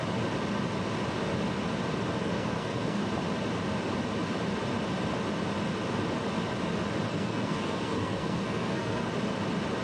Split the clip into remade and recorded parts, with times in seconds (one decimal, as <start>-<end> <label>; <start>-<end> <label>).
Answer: 0.0-2.2 recorded; 2.2-3.0 remade; 3.0-7.1 recorded; 7.1-9.1 remade; 9.1-9.8 recorded